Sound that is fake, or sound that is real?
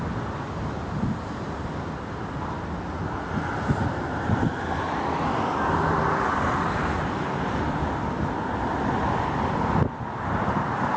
real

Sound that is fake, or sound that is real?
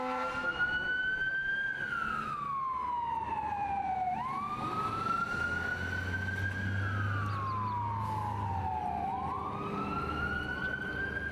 real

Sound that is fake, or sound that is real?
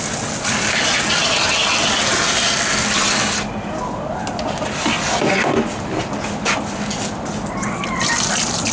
real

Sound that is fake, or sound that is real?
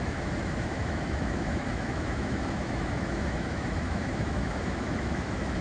fake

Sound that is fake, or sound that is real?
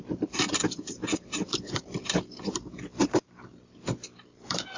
fake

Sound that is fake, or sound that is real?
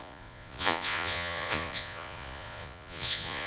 fake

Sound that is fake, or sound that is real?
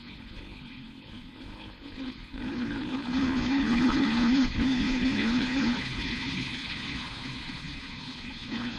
fake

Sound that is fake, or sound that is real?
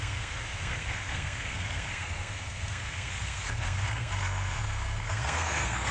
fake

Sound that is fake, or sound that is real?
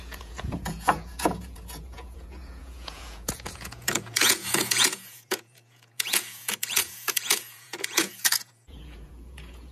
fake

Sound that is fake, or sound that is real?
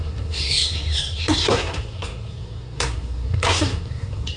fake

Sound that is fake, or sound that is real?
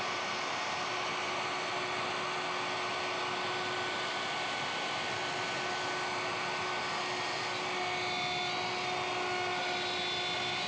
real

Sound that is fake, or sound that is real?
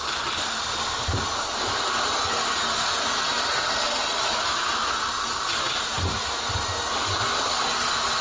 real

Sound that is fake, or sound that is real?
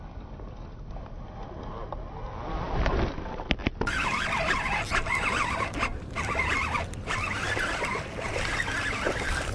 real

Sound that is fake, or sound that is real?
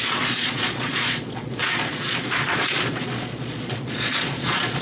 fake